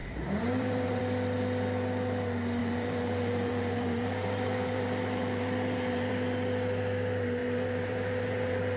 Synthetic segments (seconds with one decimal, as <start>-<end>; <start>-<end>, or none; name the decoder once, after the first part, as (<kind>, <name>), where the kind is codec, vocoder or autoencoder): 0.0-1.0 (vocoder, BigVGAN v2); 2.6-6.1; 7.4-8.8